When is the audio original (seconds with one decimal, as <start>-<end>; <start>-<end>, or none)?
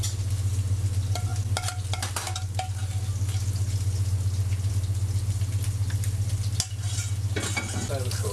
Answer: 0.0-8.3